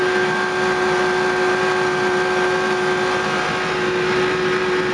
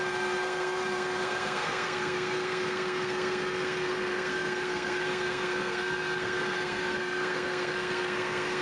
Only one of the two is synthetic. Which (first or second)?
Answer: second